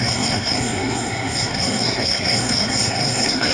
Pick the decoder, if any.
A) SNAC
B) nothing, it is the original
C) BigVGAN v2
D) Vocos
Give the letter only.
A